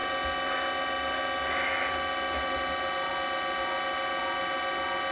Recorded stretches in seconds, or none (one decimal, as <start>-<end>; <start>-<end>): 0.0-5.1